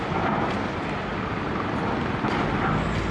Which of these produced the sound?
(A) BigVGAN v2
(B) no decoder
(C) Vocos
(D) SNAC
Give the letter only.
B